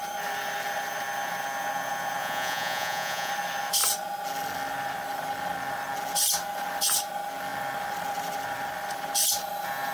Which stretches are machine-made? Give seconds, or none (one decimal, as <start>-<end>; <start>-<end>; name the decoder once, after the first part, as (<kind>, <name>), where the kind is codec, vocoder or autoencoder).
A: 2.2-3.3 (vocoder, Vocos)